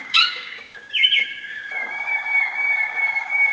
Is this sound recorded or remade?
remade